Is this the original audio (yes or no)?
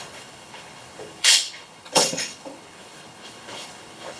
no